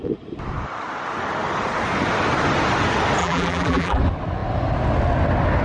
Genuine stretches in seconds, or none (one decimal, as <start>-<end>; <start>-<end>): 0.0-3.2; 4.0-5.6